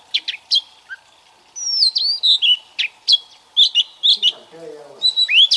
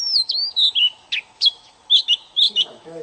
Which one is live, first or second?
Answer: first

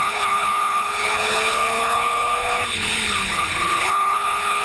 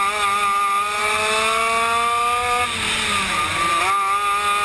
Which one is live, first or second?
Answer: second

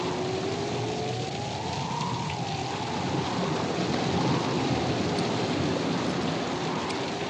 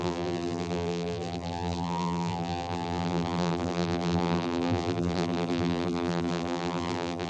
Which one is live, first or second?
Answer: first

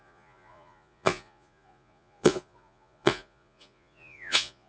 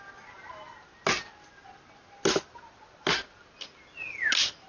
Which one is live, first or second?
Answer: second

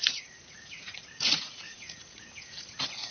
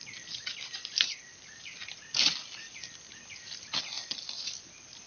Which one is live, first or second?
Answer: second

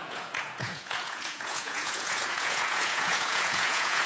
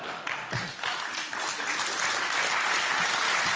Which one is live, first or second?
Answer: second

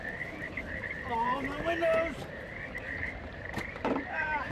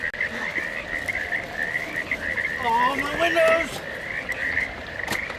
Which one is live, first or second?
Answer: second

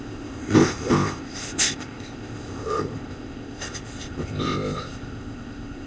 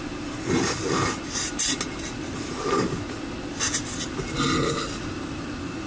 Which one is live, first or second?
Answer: second